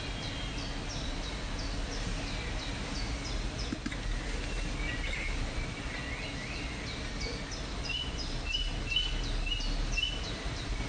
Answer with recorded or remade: recorded